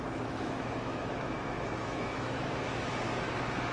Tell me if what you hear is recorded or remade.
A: remade